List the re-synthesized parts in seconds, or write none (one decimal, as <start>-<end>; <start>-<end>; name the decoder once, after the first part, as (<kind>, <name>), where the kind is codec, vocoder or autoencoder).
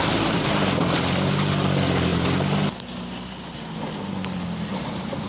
none